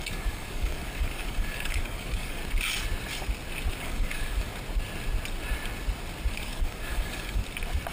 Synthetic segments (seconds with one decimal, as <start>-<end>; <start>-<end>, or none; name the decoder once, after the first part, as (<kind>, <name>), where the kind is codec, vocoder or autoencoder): 0.0-2.4 (codec, DAC); 3.7-4.5; 6.3-7.4